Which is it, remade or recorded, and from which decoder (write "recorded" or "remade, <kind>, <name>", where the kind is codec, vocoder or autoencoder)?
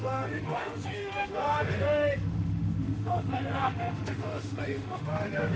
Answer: remade, autoencoder, DAC-VAE